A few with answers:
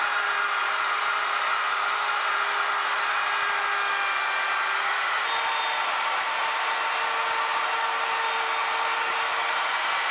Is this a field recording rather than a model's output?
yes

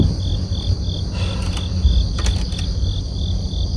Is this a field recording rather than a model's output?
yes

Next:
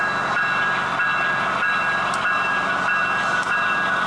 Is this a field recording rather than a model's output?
yes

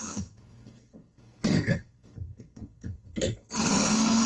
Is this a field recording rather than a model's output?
no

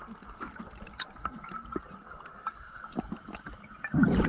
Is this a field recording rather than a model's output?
yes